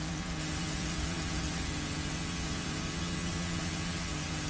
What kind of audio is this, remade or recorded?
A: remade